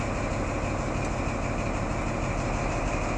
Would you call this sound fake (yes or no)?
no